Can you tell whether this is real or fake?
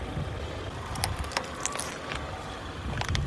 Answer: real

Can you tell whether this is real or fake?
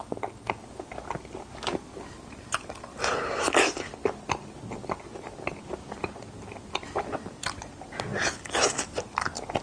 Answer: real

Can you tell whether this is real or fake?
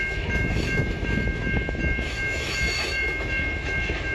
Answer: fake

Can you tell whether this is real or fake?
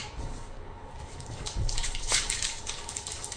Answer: fake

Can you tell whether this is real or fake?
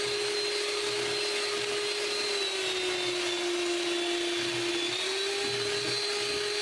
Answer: real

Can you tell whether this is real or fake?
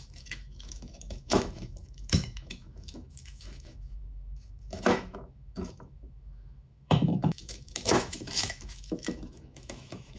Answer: fake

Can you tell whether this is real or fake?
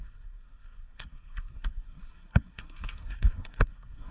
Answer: fake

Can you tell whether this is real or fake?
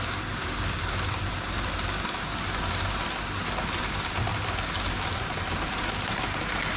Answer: real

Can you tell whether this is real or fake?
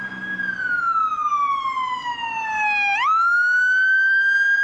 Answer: real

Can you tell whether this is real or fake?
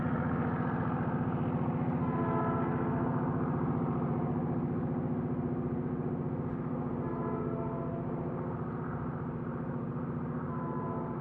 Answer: real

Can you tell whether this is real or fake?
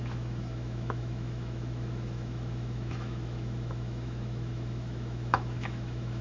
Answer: fake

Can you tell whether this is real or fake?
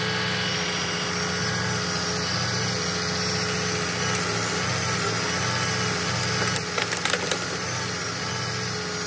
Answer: real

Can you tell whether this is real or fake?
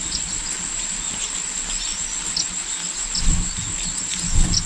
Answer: real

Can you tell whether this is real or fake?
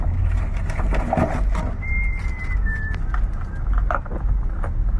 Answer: real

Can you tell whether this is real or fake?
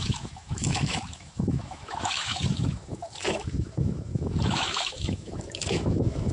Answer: fake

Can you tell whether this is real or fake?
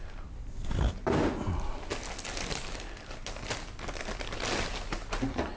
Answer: real